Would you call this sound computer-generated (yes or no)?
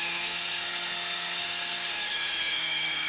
yes